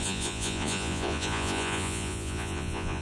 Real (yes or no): no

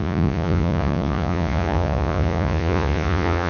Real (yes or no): no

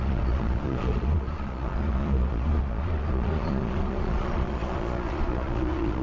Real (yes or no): no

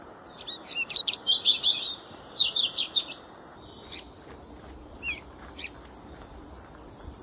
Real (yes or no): yes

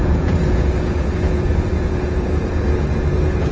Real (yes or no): no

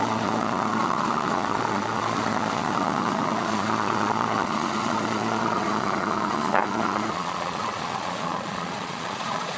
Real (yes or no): no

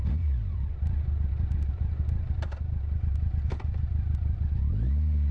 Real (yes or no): yes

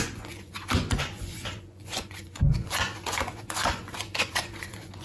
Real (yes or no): no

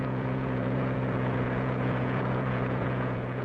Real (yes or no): no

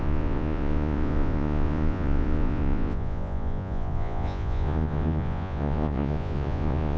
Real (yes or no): no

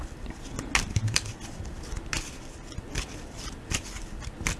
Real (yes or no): yes